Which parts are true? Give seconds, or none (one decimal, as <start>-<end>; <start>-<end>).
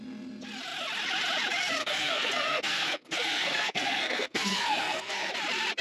0.0-1.8; 5.3-5.8